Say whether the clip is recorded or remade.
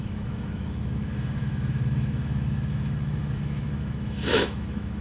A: remade